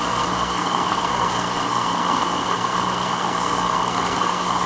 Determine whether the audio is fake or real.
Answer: fake